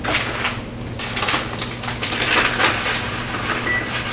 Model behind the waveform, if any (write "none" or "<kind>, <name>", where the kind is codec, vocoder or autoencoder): none